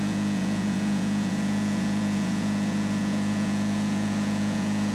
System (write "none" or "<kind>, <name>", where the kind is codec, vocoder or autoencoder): vocoder, Vocos